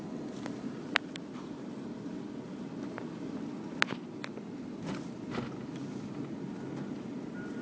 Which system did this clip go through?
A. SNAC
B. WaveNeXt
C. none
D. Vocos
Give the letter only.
C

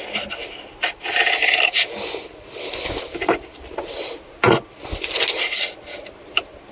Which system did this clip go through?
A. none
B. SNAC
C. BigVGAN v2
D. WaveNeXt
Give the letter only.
A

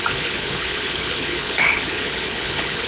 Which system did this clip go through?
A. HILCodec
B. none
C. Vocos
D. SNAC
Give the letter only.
A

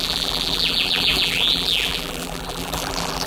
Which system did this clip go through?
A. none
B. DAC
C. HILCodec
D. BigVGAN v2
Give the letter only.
D